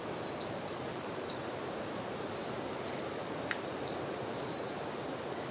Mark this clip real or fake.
fake